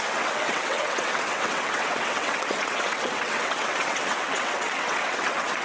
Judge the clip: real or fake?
fake